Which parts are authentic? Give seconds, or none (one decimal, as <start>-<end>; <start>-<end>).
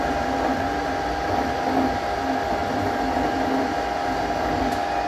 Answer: 0.0-5.1